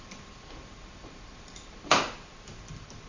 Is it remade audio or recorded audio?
remade